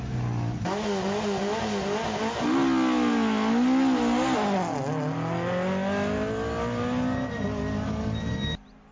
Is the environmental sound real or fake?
real